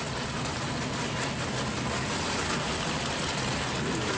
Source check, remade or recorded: recorded